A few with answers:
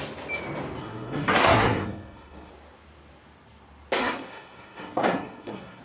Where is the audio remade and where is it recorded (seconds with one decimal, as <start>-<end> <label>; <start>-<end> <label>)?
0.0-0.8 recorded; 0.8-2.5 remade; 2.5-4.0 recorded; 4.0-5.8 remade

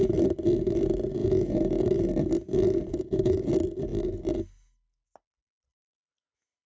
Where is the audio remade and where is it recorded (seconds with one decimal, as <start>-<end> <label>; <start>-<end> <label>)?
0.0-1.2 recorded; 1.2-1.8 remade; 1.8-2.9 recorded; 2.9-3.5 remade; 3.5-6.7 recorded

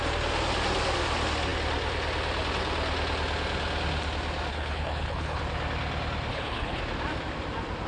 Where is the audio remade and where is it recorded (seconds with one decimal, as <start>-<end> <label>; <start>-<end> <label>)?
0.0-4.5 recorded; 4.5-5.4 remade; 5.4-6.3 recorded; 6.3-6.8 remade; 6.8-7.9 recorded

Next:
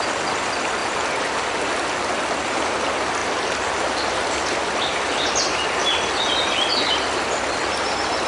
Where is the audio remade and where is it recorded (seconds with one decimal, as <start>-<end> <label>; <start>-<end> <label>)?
0.0-3.2 recorded; 3.2-7.2 remade; 7.2-8.3 recorded